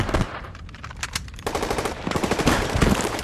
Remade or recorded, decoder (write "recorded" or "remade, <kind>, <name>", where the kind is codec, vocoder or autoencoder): remade, vocoder, BigVGAN v2